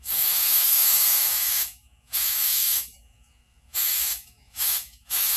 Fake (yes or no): yes